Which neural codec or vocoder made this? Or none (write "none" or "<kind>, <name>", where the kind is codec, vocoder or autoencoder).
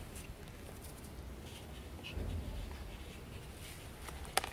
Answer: none